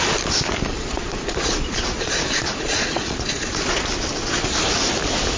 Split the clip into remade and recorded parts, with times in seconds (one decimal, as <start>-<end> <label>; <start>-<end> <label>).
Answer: 0.0-0.7 recorded; 0.7-3.9 remade; 3.9-5.4 recorded